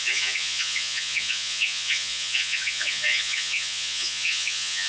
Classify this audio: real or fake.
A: fake